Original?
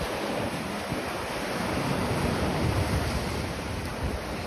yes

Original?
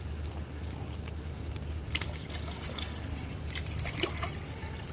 yes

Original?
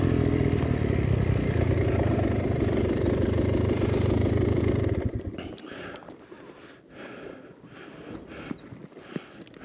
no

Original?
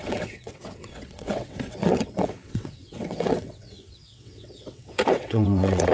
no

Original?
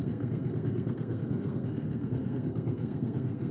no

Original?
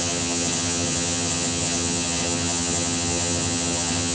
no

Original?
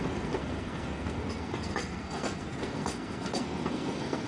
no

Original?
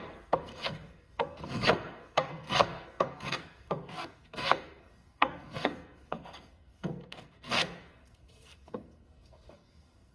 no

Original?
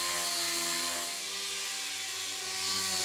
yes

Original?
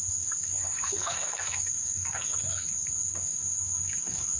no